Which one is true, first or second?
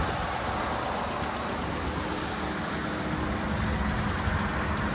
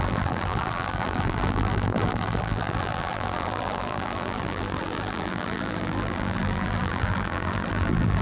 first